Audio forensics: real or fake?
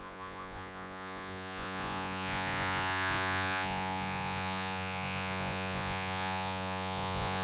fake